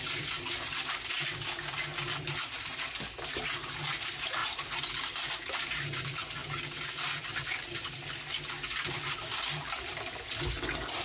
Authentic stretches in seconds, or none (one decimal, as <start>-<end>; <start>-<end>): 0.0-11.0